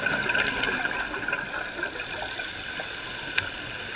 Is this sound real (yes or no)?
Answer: yes